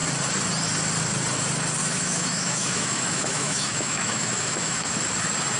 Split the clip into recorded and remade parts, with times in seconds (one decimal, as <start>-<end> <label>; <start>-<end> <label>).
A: 0.0-1.8 recorded; 1.8-4.9 remade; 4.9-5.6 recorded